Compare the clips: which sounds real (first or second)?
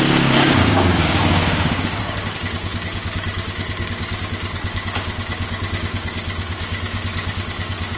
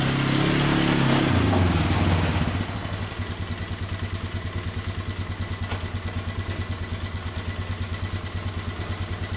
second